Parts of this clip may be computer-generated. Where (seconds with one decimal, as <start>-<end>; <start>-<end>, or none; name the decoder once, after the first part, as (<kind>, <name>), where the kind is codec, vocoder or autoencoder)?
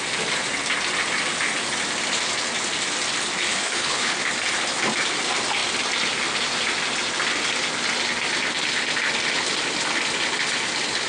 3.5-4.2 (codec, HILCodec)